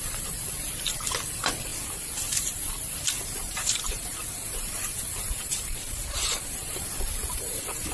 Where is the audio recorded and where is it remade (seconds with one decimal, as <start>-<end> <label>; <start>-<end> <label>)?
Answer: 0.0-7.9 remade